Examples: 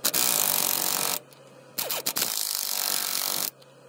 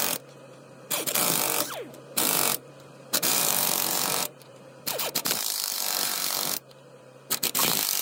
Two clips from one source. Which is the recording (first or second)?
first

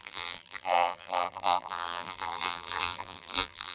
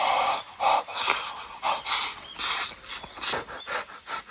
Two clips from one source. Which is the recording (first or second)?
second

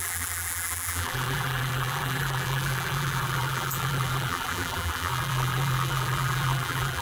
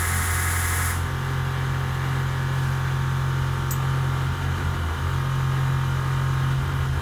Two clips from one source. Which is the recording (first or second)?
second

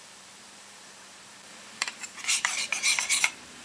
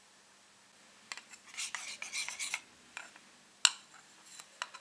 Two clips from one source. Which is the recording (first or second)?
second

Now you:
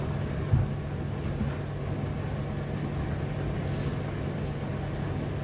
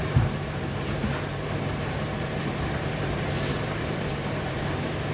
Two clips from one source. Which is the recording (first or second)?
first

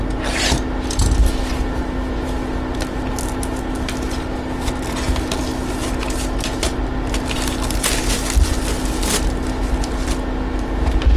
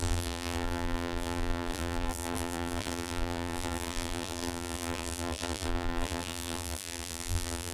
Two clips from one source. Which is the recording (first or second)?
first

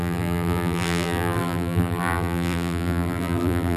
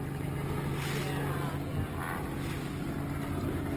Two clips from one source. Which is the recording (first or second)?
second